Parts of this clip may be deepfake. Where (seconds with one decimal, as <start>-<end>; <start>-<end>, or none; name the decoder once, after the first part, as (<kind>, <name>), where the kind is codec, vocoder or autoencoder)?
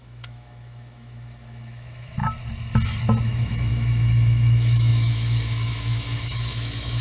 0.0-2.2 (autoencoder, DAC-VAE); 3.2-7.0